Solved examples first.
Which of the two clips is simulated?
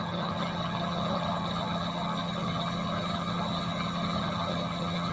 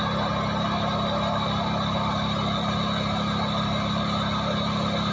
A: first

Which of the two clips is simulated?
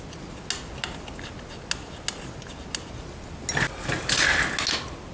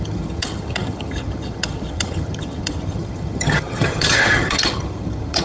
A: second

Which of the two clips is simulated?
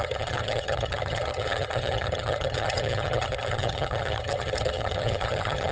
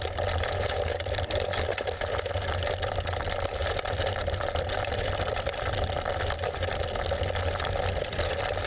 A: first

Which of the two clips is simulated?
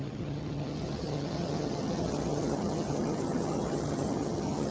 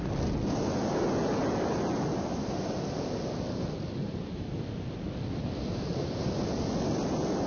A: first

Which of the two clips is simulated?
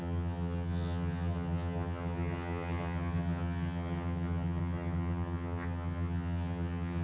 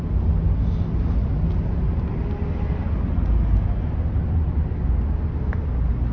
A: first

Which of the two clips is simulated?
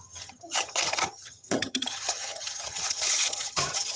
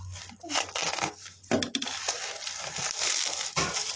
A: first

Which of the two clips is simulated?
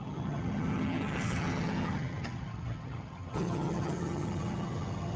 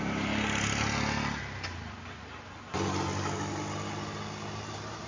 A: first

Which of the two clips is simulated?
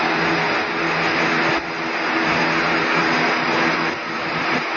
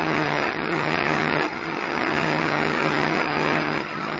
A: second